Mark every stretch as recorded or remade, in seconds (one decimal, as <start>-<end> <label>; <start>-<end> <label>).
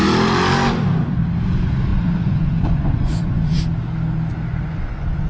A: 0.0-1.9 recorded; 1.9-3.6 remade; 3.6-4.5 recorded; 4.5-5.3 remade